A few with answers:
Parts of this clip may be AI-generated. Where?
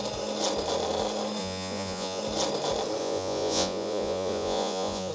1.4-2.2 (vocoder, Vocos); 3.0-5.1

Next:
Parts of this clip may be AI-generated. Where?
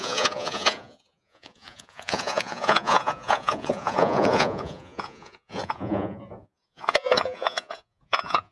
0.0-8.5 (vocoder, Vocos)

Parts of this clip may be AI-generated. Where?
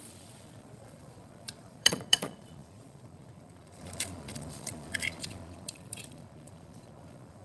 0.0-7.4 (vocoder, Vocos)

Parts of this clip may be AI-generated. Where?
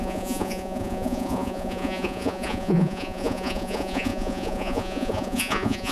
0.0-5.9 (vocoder, Vocos)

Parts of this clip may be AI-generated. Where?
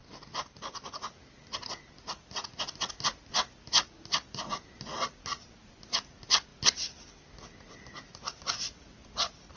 none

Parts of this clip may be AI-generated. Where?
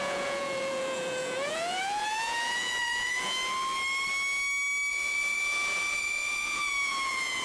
0.0-3.4 (vocoder, Vocos); 4.9-7.4